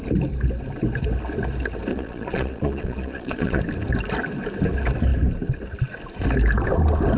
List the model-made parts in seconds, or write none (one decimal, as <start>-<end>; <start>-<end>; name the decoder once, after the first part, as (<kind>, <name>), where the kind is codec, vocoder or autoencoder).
1.9-3.6 (vocoder, Vocos)